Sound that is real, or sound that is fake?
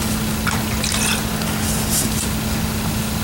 real